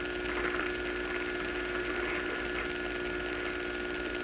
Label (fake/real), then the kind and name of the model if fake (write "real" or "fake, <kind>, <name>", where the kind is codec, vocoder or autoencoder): real